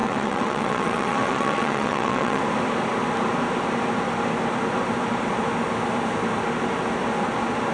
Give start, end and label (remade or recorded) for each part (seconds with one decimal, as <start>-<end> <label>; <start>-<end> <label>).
0.0-2.4 remade; 2.4-7.7 recorded

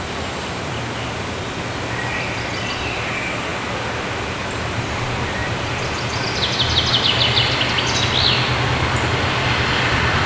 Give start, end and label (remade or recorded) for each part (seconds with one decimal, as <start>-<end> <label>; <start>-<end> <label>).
0.0-10.3 recorded

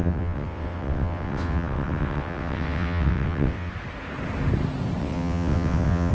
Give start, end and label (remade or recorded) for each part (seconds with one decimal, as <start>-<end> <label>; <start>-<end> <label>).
0.0-3.7 remade; 3.7-5.0 recorded; 5.0-6.1 remade